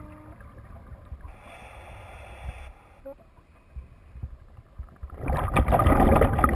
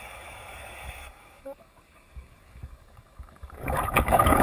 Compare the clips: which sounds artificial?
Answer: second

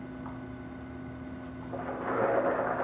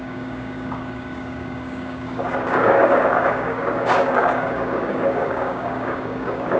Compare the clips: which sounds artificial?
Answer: second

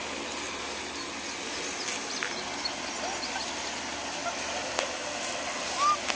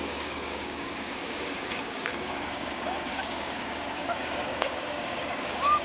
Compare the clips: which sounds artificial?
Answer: second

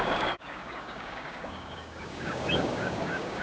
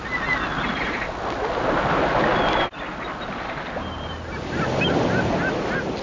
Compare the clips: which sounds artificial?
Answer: first